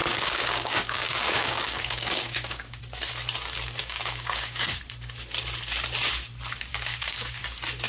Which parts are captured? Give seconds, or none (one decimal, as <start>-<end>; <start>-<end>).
2.8-3.8; 4.8-6.7; 7.4-7.9